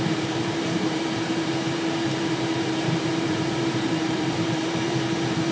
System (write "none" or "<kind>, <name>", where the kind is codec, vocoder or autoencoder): vocoder, BigVGAN v2